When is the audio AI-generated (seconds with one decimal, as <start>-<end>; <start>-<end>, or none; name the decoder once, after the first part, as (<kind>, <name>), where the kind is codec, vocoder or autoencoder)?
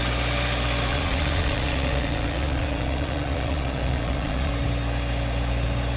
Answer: 0.9-4.5 (vocoder, Vocos)